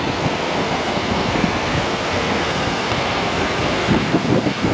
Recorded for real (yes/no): no